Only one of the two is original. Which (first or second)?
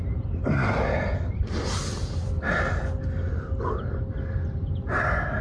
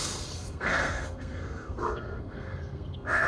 first